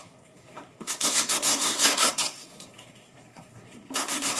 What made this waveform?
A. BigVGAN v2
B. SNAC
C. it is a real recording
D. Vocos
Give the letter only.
B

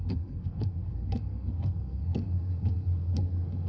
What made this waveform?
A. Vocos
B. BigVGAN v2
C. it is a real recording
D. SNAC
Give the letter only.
D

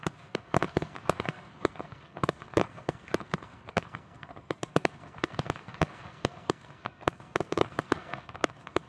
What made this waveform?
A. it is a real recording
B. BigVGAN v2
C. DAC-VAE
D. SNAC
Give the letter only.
D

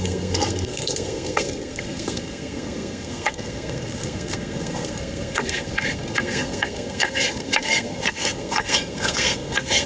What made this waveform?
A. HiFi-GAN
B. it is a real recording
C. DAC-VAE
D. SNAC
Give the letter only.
D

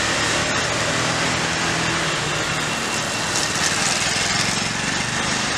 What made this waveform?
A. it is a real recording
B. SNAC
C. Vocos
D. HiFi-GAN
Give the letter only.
A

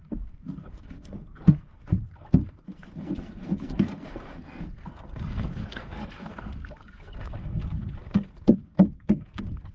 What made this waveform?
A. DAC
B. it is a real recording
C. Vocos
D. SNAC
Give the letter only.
D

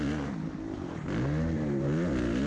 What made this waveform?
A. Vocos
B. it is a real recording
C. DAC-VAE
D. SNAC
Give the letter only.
B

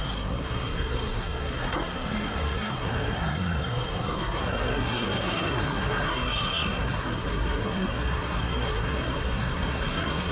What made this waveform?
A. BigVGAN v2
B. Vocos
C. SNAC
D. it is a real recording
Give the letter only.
C